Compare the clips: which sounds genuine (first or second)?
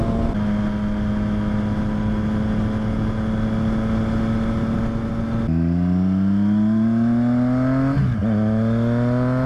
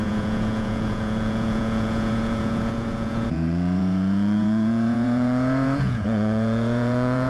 first